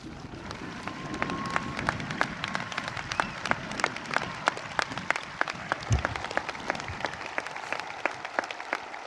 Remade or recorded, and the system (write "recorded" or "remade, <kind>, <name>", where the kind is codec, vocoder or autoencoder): remade, vocoder, BigVGAN v2